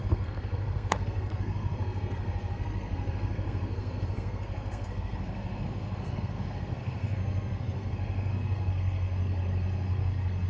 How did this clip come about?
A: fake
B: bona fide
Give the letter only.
A